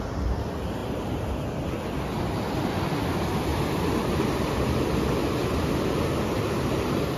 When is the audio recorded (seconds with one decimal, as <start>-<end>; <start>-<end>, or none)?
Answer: 0.0-0.8; 1.7-3.5; 4.5-7.2